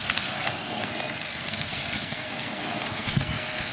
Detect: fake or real fake